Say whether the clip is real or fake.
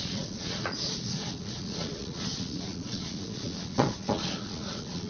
fake